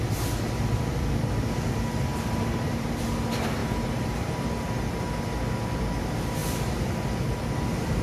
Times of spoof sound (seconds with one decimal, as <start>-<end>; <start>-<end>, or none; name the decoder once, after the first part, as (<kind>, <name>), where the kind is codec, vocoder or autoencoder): 2.1-3.0 (vocoder, BigVGAN v2); 3.6-4.3